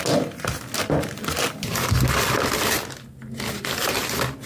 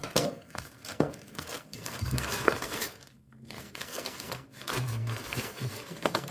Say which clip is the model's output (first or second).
second